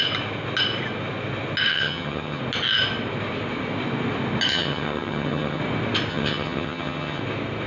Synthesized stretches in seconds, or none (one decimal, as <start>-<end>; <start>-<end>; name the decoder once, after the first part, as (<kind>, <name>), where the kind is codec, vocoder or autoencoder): 1.7-2.4 (vocoder, HiFi-GAN); 4.5-5.6; 6.1-7.2